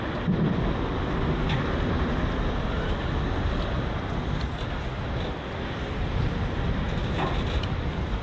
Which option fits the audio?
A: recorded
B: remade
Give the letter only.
A